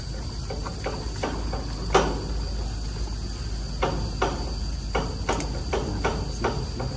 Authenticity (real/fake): real